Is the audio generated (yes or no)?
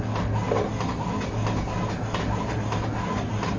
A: no